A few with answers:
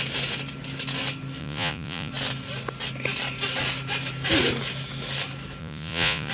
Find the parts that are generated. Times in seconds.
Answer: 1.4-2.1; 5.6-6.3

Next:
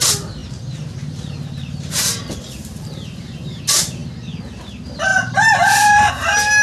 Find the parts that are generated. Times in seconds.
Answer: 0.4-3.6; 5.1-6.1

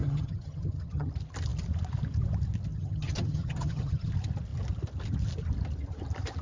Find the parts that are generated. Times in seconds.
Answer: 0.0-1.1; 2.7-4.1

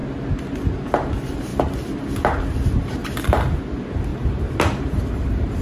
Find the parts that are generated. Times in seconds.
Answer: 0.5-1.5; 2.7-4.1; 5.0-5.6

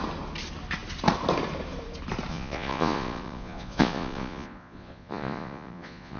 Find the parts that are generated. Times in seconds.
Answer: 2.3-6.2

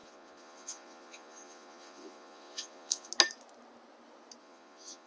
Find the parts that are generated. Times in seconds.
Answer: 0.0-3.1; 4.4-5.1

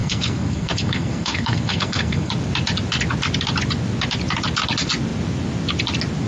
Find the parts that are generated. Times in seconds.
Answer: 0.0-2.3